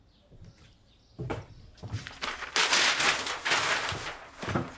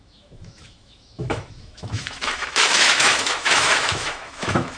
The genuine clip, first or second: first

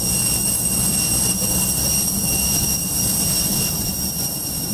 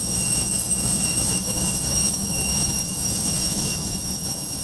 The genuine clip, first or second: first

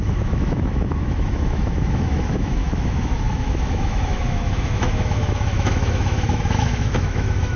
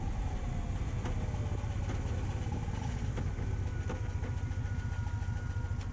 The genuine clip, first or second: second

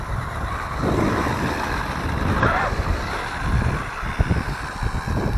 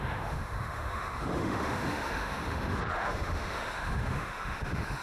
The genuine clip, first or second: first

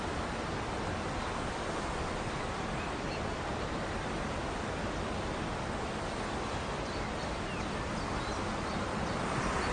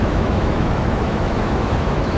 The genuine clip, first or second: first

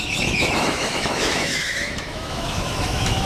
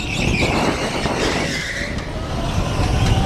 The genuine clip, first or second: second